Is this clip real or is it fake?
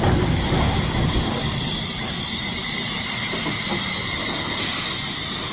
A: real